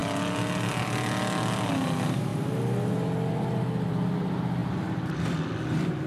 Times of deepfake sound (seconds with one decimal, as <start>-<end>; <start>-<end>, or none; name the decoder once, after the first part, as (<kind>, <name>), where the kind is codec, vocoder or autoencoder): 4.6-5.2 (vocoder, BigVGAN v2)